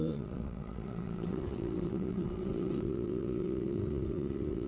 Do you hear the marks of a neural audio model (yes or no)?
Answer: yes